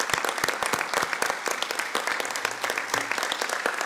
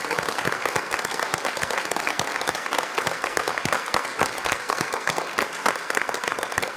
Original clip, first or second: first